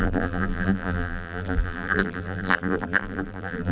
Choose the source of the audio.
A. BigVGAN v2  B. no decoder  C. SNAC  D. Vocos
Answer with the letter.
A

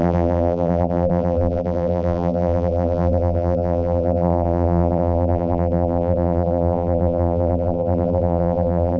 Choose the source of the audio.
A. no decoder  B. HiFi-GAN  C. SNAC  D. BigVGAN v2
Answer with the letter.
D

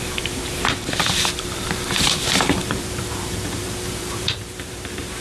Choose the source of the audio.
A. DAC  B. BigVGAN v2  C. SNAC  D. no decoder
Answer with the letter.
B